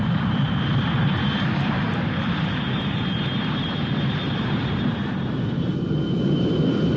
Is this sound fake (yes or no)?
yes